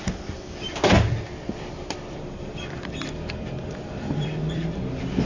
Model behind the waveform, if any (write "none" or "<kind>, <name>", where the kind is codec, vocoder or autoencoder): vocoder, BigVGAN v2